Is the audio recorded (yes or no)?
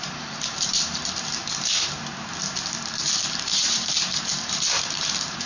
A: no